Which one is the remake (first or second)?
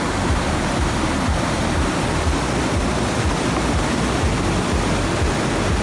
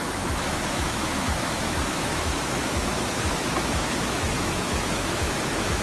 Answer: second